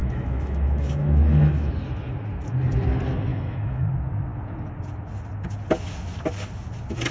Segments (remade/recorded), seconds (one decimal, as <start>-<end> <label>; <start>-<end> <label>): 0.0-1.7 remade; 1.7-3.3 recorded; 3.3-3.9 remade; 3.9-7.1 recorded